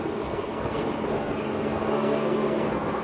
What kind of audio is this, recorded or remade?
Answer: remade